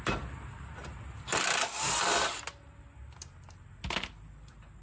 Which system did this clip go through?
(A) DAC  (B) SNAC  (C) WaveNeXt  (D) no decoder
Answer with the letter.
D